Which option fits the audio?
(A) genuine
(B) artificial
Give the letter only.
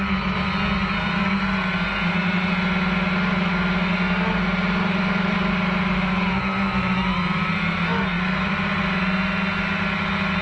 A